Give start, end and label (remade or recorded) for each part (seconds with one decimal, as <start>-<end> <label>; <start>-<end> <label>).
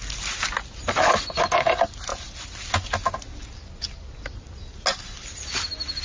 0.0-6.0 recorded